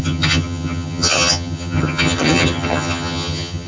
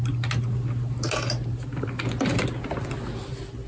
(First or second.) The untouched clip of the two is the second